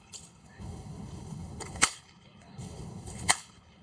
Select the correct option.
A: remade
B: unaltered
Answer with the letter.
A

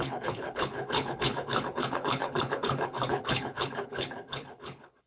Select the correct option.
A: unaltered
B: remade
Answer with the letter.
B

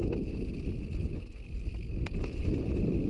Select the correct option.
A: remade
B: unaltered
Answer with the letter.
B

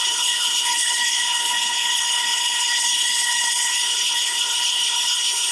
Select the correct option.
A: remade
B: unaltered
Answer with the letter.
A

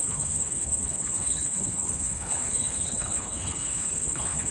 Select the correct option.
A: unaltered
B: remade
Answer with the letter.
B